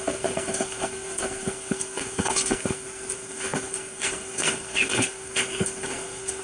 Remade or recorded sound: remade